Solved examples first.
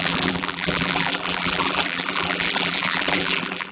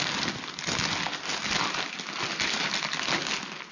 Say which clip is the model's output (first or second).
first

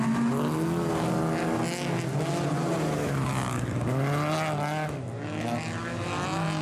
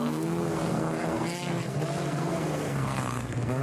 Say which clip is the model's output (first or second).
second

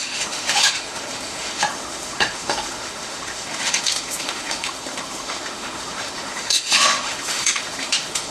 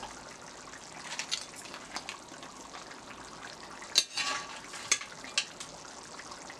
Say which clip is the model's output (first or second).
first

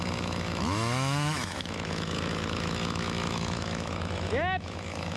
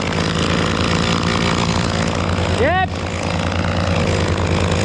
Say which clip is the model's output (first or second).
first